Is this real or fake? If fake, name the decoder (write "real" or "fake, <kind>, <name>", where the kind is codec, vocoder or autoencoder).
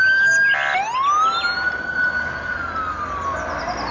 real